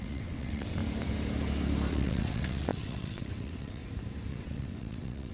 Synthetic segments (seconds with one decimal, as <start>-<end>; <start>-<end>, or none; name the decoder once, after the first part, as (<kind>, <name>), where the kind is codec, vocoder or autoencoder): 0.0-0.8 (vocoder, WaveNeXt); 1.9-3.8; 4.3-5.3